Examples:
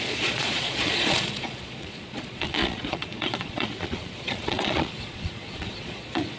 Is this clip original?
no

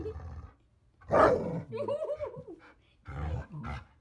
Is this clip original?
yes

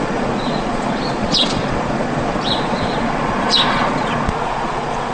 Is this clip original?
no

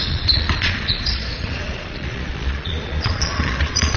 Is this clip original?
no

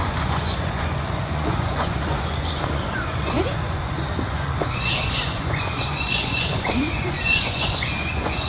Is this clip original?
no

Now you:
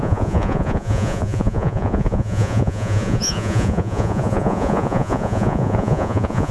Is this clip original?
no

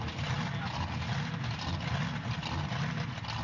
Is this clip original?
yes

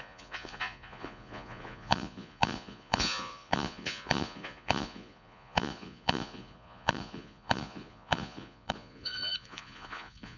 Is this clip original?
no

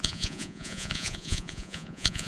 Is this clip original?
no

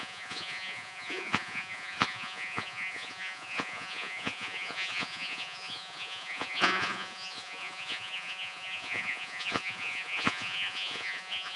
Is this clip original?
no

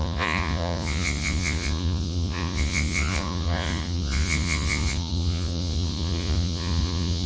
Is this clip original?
no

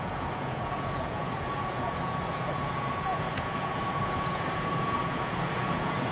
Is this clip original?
no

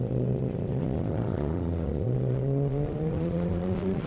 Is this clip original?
no